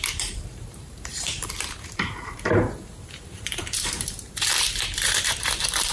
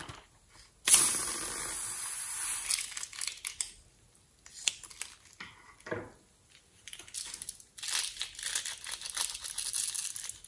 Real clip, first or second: second